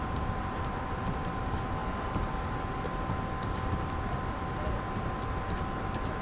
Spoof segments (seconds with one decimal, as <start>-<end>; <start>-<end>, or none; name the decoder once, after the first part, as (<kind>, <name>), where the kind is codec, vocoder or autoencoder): 0.0-1.8 (vocoder, BigVGAN v2); 4.1-6.2